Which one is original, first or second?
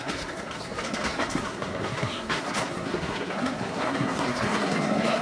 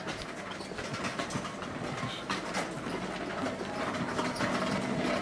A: second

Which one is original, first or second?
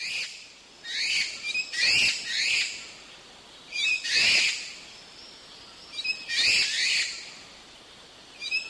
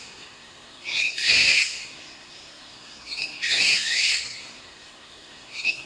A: first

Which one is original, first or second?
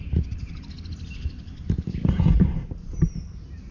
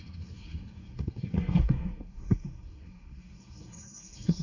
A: first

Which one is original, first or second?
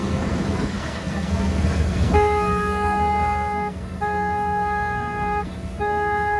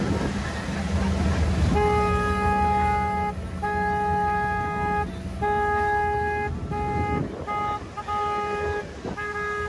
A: second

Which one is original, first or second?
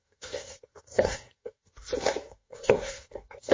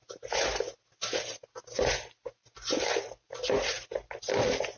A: second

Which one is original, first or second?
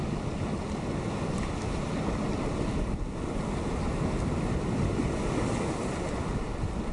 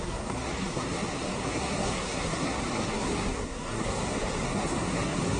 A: first